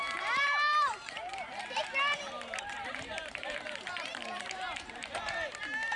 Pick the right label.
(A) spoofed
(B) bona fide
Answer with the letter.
A